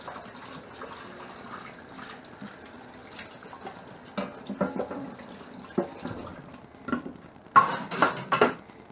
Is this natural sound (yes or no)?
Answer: yes